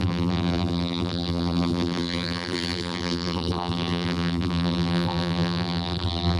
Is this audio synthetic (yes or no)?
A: yes